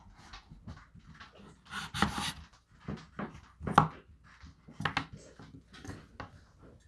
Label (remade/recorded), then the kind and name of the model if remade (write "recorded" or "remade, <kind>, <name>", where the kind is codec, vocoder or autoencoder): recorded